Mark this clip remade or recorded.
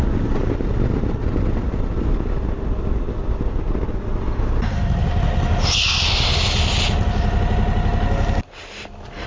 recorded